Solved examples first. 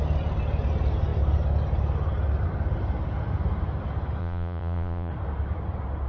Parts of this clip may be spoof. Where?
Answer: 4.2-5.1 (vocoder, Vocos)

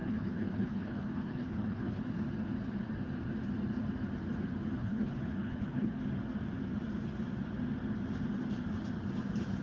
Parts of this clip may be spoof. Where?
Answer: 0.0-2.0 (codec, HILCodec); 4.8-6.1

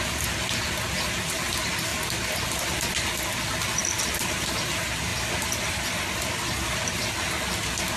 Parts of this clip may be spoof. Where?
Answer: none

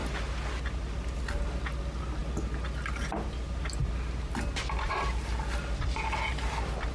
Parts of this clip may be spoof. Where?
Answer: none

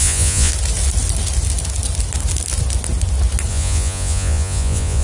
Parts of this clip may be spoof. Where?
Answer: 0.0-0.5 (vocoder, Vocos); 3.5-5.0

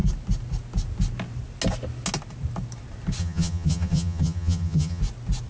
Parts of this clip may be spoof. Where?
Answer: 3.2-5.0 (vocoder, HiFi-GAN)

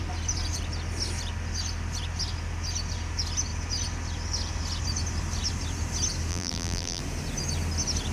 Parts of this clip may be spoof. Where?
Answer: 6.3-7.0 (vocoder, BigVGAN v2)

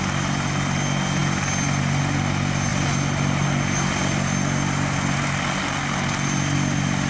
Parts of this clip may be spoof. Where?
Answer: none